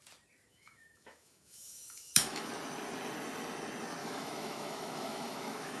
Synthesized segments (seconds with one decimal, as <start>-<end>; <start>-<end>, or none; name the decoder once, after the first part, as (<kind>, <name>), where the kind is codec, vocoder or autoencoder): 0.5-2.5 (autoencoder, DAC-VAE); 4.0-5.8